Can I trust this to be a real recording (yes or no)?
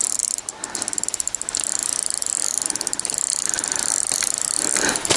yes